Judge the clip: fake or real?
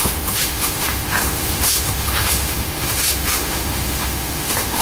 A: fake